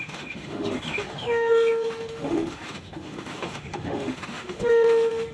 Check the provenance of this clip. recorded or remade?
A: remade